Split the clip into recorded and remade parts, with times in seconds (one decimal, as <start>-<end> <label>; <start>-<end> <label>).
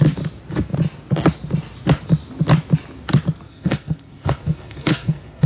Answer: 0.0-3.5 recorded; 3.5-5.5 remade